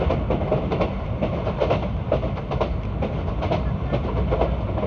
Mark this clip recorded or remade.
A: recorded